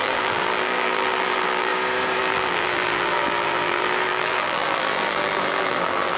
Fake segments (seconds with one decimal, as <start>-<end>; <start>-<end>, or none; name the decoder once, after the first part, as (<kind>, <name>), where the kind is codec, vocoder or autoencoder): 0.0-1.7 (vocoder, BigVGAN v2); 2.2-6.2